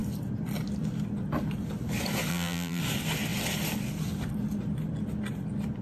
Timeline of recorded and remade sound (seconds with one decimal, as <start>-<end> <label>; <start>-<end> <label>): 0.0-2.3 recorded; 2.3-2.8 remade; 2.8-5.8 recorded